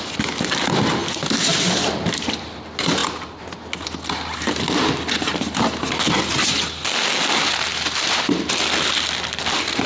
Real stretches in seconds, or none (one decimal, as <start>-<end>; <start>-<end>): 0.0-9.9